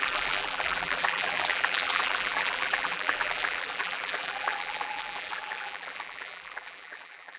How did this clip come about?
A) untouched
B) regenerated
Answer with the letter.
B